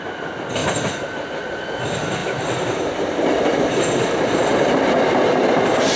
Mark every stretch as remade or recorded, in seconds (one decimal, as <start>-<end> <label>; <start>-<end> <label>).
0.0-6.0 recorded